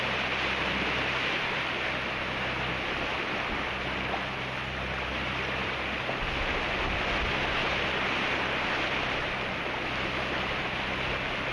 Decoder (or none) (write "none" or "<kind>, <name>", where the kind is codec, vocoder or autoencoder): none